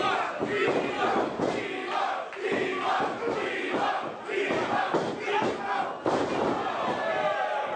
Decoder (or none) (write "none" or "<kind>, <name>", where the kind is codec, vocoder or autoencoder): none